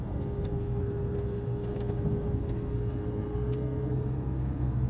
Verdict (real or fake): fake